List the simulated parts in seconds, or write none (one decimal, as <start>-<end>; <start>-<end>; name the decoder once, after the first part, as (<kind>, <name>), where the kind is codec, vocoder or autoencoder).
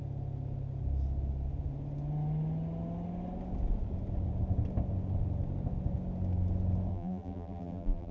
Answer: 6.9-8.1 (vocoder, BigVGAN v2)